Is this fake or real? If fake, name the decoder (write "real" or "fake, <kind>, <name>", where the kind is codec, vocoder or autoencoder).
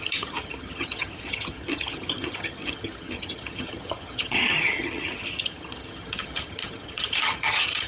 fake, vocoder, HiFi-GAN